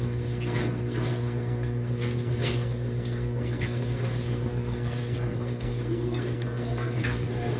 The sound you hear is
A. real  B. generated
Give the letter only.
B